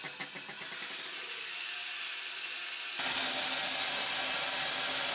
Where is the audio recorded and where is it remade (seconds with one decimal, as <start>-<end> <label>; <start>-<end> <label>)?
0.0-5.1 recorded